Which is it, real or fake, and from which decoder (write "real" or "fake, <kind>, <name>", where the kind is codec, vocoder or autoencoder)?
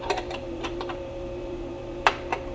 fake, vocoder, BigVGAN v2